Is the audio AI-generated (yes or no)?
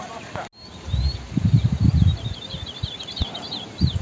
no